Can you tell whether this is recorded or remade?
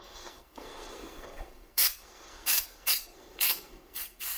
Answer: remade